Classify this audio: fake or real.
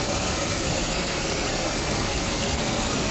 fake